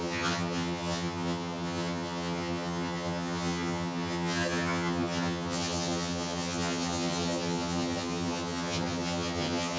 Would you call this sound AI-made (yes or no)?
yes